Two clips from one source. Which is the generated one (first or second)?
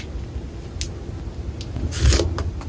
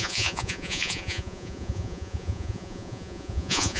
second